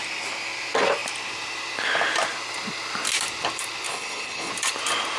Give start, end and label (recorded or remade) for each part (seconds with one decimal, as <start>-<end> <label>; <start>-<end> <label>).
0.0-3.9 recorded; 3.9-4.5 remade; 4.5-5.2 recorded